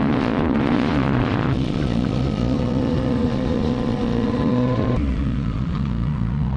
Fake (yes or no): yes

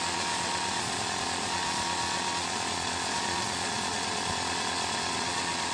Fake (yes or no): yes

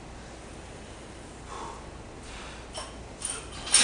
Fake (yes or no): no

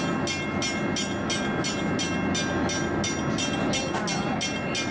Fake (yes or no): no